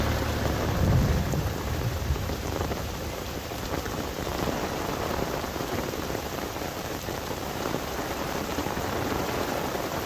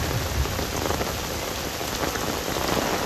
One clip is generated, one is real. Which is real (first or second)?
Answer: second